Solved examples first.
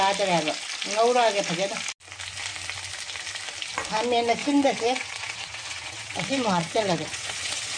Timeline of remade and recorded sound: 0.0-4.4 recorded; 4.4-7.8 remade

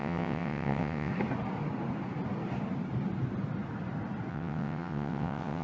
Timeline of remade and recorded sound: 0.0-1.1 remade; 1.1-4.3 recorded; 4.3-5.6 remade

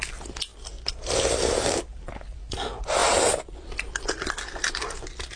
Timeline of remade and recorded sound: 0.0-5.4 recorded

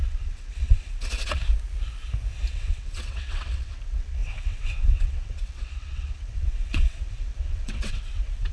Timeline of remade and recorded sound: 0.0-1.4 remade; 1.4-2.5 recorded; 2.5-8.5 remade